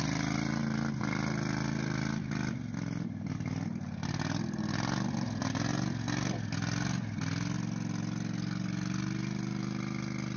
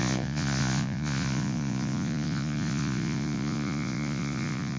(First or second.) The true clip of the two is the first